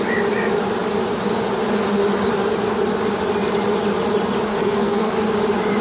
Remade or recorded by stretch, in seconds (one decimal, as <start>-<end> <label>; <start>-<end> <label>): 0.0-4.5 recorded; 4.5-5.1 remade; 5.1-5.8 recorded